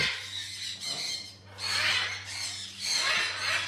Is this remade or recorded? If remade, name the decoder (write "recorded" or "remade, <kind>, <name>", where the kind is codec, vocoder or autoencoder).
recorded